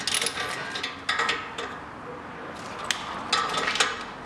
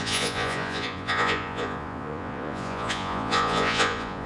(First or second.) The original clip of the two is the first